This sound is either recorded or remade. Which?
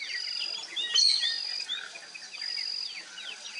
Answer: recorded